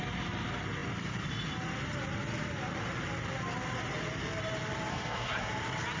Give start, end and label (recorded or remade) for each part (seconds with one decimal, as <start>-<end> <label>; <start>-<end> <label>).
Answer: 0.0-4.9 recorded; 4.9-5.5 remade; 5.5-6.0 recorded